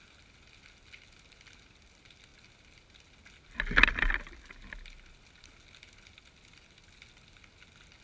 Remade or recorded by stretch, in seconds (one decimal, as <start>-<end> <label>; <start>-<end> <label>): 0.0-8.0 recorded